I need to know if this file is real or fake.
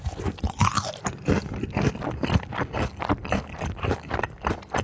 real